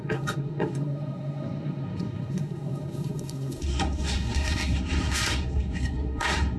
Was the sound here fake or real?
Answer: fake